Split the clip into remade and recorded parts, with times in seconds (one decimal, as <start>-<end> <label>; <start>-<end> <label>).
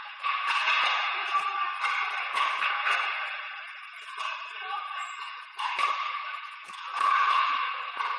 0.0-1.5 remade; 1.5-2.2 recorded; 2.2-8.2 remade